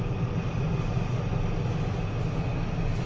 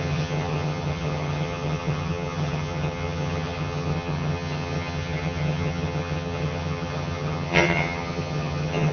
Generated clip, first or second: second